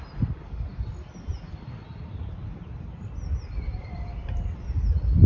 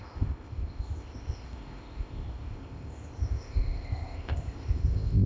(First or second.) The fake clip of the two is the second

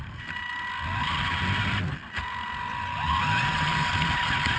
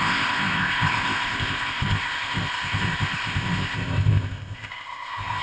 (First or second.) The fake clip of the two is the second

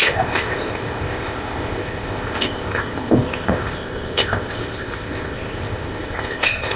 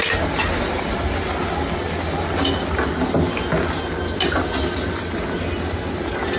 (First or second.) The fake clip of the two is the first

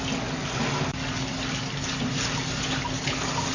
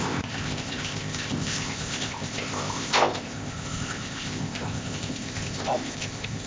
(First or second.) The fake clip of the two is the second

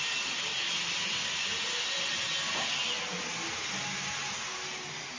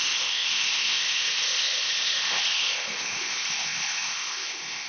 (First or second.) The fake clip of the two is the second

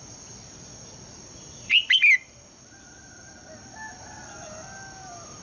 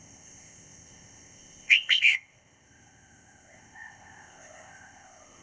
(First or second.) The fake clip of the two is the second